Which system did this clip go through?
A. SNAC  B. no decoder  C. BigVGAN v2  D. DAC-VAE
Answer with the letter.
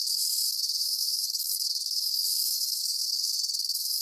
A